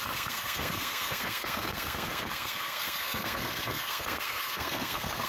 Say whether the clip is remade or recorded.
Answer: remade